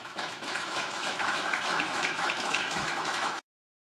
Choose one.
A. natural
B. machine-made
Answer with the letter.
B